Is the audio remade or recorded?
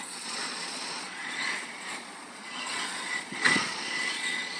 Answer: remade